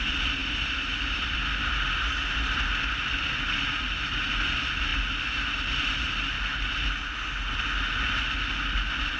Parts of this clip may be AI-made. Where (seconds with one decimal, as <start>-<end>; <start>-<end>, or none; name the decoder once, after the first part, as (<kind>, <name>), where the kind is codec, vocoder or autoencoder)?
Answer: none